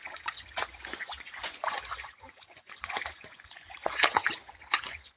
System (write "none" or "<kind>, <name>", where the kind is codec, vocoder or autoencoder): vocoder, Vocos